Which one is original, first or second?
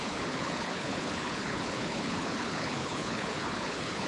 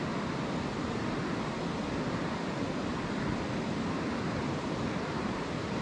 second